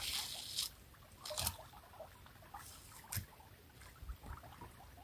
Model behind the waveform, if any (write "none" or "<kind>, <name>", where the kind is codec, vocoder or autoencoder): none